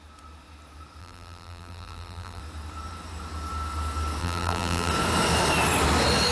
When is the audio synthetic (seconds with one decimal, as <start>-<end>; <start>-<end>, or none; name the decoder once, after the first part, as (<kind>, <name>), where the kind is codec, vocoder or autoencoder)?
1.0-2.4 (vocoder, BigVGAN v2); 4.2-4.9